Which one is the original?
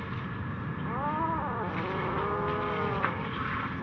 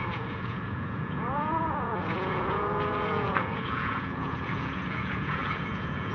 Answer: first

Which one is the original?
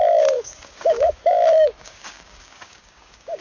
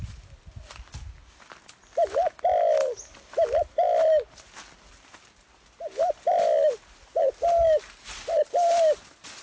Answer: second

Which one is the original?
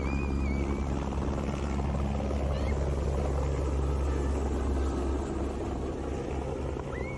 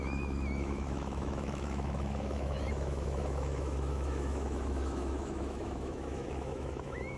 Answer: first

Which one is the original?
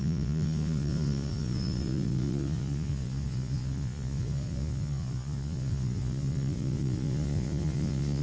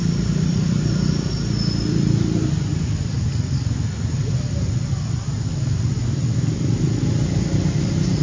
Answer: second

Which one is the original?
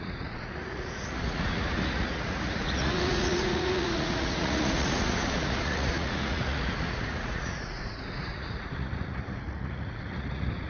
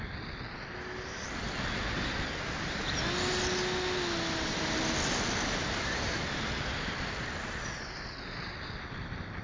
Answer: second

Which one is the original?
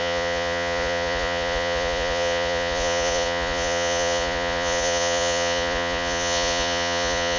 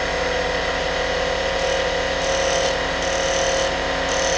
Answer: second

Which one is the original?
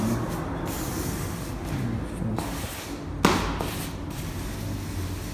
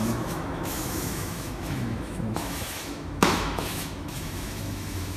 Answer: first